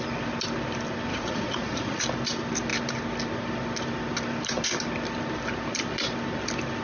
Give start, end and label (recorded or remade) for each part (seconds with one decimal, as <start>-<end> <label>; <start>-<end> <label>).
0.0-1.1 recorded; 1.1-2.0 remade; 2.0-6.8 recorded